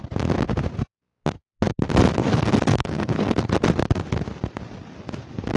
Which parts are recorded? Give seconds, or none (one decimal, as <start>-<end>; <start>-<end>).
0.0-2.2; 3.5-5.6

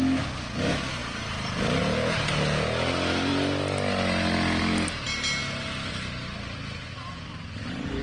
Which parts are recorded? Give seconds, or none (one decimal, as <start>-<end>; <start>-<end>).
0.0-8.0

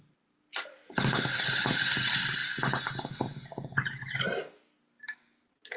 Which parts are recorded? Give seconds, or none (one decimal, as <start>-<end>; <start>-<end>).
0.0-5.8

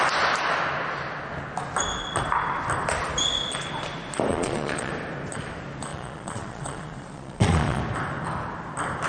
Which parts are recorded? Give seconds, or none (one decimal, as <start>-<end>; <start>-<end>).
0.0-4.3; 4.9-5.9; 7.8-9.1

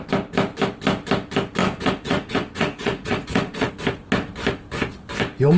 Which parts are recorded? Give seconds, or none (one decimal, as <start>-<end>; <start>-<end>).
0.0-1.6; 3.7-5.6

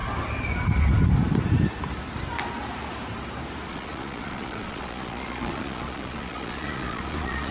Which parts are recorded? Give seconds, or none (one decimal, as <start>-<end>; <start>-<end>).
0.0-3.7

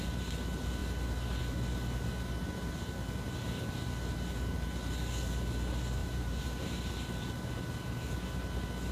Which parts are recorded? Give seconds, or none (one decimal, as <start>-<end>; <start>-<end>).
0.0-6.0; 6.9-8.9

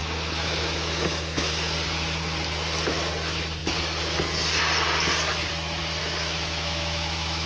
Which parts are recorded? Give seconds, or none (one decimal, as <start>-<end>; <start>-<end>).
1.5-6.0